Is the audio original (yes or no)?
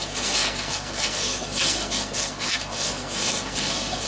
no